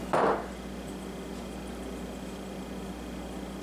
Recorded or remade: recorded